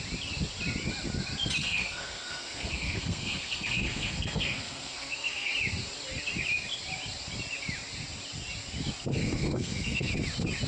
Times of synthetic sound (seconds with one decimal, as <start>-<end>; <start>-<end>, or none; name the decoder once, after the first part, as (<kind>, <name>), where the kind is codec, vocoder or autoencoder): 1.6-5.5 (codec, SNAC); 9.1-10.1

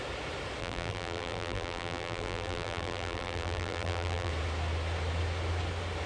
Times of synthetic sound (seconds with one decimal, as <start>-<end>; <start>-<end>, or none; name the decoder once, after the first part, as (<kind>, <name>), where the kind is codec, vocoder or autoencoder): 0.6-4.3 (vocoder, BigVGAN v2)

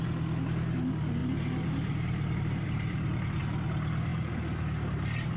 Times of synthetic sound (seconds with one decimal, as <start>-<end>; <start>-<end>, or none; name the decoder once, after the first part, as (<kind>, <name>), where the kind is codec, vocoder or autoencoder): 1.2-3.4 (vocoder, BigVGAN v2)

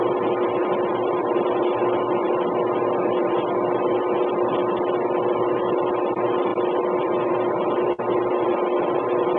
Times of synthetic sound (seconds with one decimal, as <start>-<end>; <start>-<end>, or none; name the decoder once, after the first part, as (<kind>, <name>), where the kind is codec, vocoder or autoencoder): none

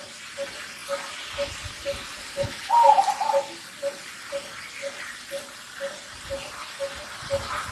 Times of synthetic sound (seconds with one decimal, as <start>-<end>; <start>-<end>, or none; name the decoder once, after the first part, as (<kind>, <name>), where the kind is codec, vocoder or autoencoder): 2.2-2.7 (codec, HILCodec)

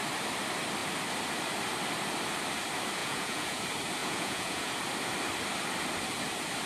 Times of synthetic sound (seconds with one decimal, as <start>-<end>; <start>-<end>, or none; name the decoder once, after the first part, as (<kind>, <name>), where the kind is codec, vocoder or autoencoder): 3.0-3.6 (vocoder, Vocos); 4.0-4.7